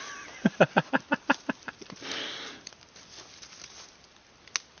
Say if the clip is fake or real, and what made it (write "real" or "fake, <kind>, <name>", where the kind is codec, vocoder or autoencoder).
real